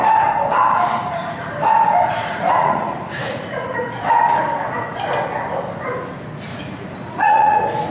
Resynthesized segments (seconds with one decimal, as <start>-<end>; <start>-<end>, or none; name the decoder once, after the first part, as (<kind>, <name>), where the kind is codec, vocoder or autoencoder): 2.2-4.2 (vocoder, Vocos); 6.5-7.9